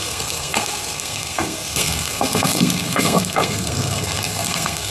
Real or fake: fake